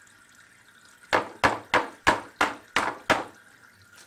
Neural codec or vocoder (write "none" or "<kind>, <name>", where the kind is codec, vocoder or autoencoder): none